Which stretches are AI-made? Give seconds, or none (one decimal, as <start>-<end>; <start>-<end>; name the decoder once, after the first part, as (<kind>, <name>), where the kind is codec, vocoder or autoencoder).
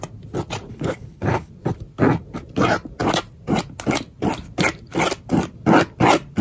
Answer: 0.7-1.5 (codec, HILCodec)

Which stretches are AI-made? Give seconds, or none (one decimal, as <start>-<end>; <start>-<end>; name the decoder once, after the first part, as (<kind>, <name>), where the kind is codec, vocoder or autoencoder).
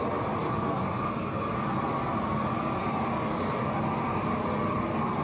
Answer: none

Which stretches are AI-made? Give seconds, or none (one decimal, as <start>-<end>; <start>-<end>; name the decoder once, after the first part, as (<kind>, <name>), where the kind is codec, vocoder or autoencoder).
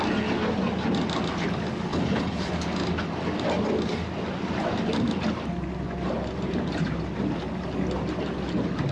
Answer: 1.9-2.5 (codec, HILCodec)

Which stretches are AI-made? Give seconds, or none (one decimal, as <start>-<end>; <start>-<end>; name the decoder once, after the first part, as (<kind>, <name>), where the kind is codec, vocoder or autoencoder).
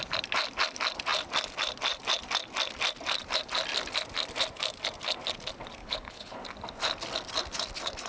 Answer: 5.8-6.4 (codec, HILCodec)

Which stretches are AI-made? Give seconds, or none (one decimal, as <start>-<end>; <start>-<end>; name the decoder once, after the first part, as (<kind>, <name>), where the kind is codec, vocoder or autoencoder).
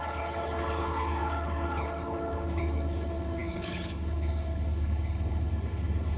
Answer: 0.0-6.2 (codec, HILCodec)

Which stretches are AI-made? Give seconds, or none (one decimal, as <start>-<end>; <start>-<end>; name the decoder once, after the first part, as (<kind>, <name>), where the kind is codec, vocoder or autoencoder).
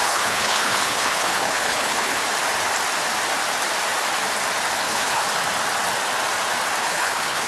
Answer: 0.0-2.2 (codec, HILCodec); 4.8-5.2; 6.8-7.5